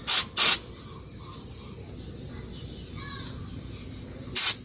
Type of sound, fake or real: real